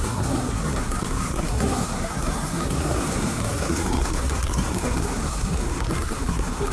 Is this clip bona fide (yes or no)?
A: no